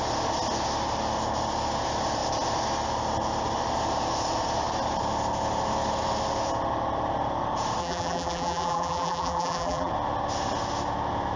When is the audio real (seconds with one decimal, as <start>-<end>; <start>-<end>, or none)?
0.0-7.8; 9.9-11.4